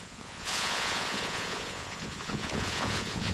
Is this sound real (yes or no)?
no